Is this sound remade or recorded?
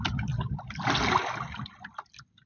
recorded